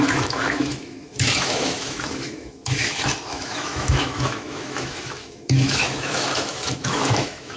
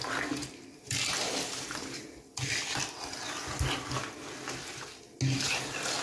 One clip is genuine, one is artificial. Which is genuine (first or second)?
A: second